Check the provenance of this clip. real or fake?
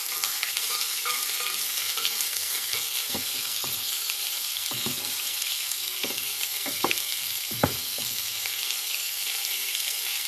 fake